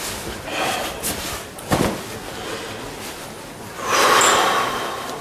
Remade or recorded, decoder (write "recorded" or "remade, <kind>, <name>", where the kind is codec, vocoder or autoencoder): recorded